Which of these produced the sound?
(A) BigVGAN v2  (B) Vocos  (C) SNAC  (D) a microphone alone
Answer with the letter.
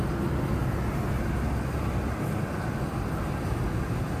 D